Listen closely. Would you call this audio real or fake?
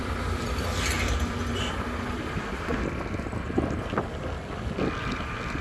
real